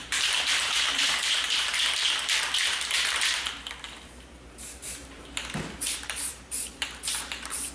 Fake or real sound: fake